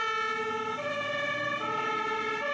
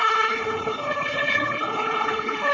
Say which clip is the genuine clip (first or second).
first